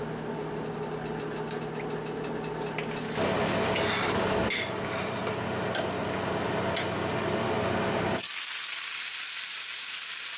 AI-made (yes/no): no